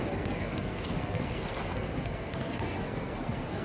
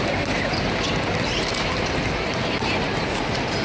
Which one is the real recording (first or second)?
second